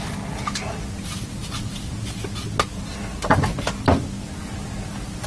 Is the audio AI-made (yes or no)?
no